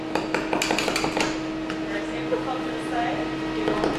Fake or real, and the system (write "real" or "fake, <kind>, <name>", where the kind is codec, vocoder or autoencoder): real